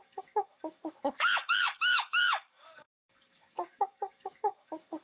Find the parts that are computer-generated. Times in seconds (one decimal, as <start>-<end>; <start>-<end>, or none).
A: 0.0-5.0

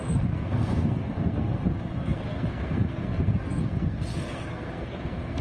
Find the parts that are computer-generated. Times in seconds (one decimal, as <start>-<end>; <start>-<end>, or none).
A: 0.0-5.4

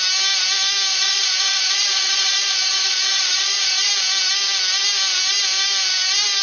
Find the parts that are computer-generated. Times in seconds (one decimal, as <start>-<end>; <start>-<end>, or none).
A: 0.9-3.9